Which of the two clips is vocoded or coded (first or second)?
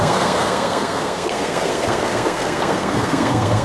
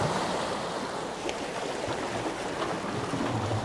first